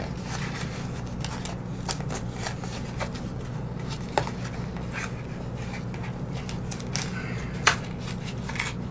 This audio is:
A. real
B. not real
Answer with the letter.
A